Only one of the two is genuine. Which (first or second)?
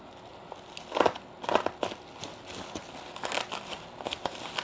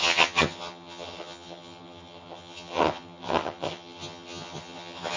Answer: first